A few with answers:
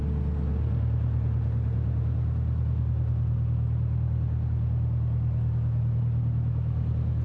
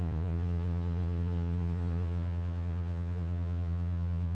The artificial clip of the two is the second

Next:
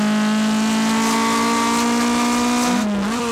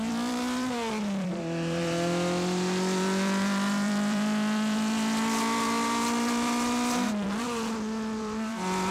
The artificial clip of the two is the second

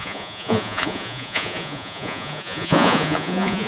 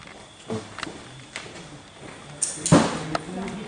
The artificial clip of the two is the first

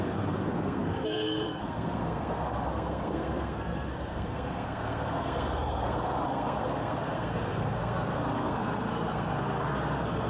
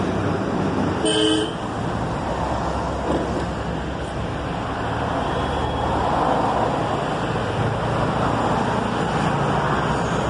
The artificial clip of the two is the first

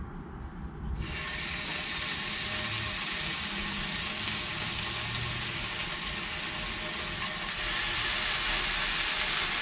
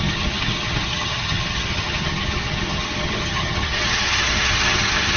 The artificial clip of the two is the second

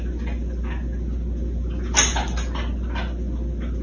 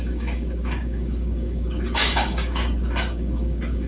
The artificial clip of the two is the second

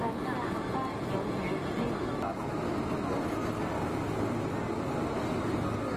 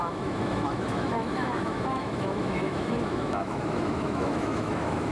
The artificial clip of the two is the second